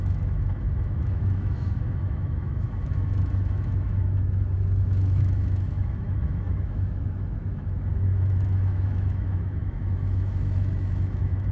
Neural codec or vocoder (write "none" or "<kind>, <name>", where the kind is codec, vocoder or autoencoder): autoencoder, DAC-VAE